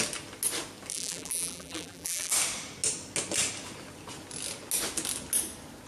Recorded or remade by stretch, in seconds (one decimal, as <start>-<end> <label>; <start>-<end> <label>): 0.0-0.9 recorded; 0.9-2.3 remade; 2.3-5.9 recorded